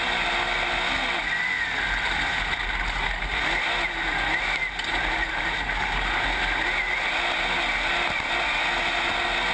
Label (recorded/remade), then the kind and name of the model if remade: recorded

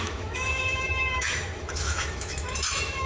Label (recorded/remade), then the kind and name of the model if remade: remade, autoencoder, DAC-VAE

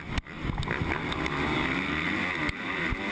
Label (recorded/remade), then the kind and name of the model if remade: recorded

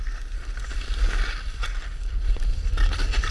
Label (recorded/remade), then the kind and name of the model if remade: recorded